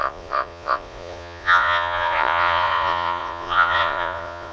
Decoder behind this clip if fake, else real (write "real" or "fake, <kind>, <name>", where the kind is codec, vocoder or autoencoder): fake, vocoder, Vocos